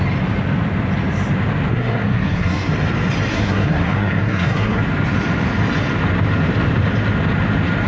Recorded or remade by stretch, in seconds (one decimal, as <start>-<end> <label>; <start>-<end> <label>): 0.0-1.7 recorded; 1.7-2.7 remade; 2.7-3.3 recorded; 3.3-4.8 remade; 4.8-7.9 recorded